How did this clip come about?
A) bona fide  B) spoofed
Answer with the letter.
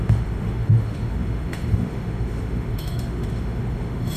B